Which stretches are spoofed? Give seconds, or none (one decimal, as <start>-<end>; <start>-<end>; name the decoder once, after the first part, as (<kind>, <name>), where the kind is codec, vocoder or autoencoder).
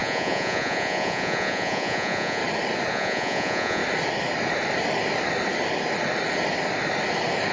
0.0-2.4 (vocoder, Vocos); 2.9-3.8